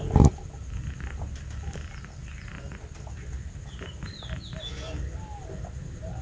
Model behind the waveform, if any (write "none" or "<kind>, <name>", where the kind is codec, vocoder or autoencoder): none